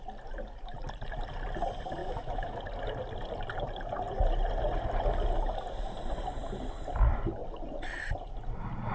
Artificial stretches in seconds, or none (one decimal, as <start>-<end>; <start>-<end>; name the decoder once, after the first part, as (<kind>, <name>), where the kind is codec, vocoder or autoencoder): 2.0-2.6 (autoencoder, DAC-VAE)